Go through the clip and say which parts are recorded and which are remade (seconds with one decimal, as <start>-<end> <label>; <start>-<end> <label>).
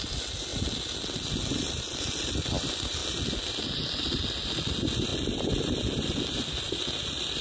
0.0-7.4 recorded